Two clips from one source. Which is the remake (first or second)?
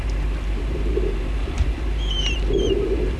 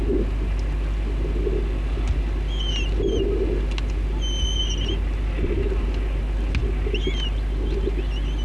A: first